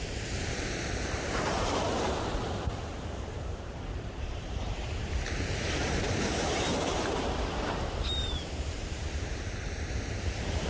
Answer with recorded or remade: remade